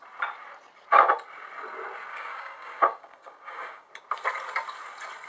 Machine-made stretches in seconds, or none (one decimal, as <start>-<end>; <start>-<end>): 2.1-3.9